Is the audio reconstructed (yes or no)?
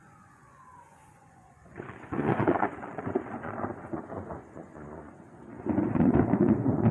yes